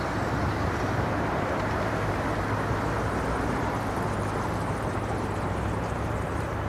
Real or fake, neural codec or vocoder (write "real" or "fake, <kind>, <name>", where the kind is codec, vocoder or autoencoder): fake, vocoder, BigVGAN v2